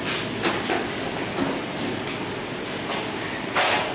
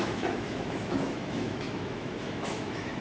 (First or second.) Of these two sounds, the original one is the first